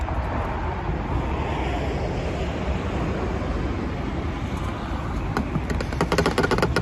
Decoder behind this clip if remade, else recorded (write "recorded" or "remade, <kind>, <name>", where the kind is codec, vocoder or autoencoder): recorded